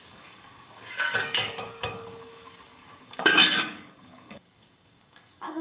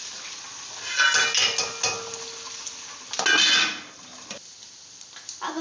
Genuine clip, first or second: second